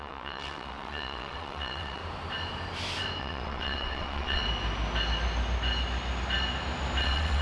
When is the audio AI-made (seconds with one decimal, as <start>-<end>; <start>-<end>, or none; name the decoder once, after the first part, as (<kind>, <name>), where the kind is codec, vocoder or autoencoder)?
0.0-2.0 (vocoder, WaveNeXt); 3.2-4.4; 7.0-7.4